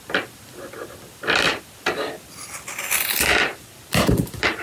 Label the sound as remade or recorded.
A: recorded